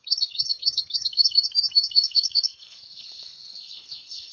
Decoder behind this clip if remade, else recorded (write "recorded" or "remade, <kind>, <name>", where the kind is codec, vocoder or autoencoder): remade, codec, SNAC